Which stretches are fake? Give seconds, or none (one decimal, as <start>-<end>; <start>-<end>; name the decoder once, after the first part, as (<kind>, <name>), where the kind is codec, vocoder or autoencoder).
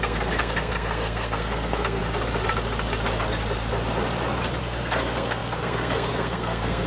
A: 0.0-2.0 (codec, SNAC); 4.6-6.9